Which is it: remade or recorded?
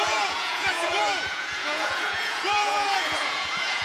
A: remade